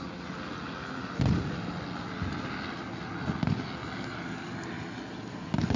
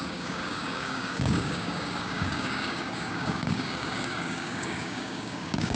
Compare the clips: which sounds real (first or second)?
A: first